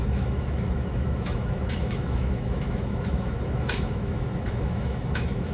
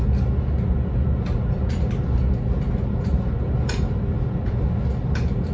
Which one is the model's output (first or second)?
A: first